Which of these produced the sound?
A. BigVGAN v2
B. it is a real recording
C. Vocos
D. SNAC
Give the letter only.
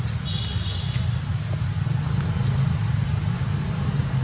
B